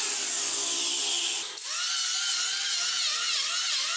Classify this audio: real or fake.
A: real